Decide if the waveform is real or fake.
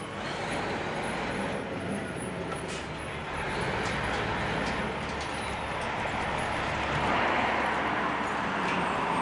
real